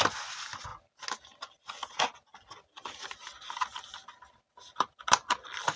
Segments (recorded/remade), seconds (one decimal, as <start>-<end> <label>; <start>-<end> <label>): 0.0-5.8 recorded